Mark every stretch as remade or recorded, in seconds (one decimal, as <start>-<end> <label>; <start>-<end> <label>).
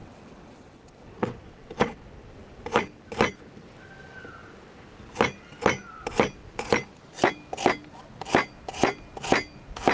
0.0-2.0 remade; 2.0-9.9 recorded